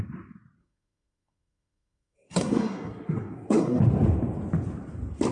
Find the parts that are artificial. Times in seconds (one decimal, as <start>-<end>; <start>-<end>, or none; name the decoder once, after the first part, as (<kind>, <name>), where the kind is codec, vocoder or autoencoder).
0.6-3.8 (codec, SNAC)